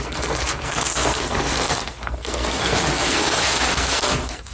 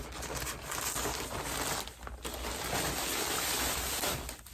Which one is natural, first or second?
second